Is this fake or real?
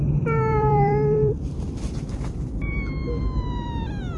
fake